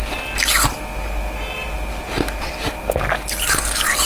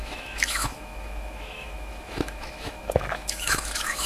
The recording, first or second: first